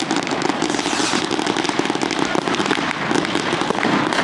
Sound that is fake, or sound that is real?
real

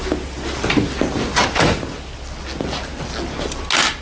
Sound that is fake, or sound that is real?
real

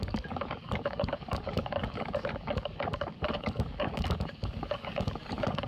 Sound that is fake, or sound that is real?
fake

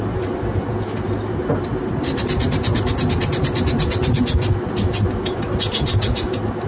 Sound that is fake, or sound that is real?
real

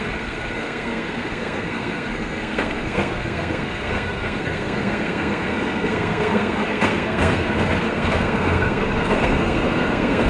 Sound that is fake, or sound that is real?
fake